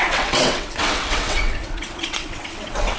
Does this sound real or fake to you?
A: fake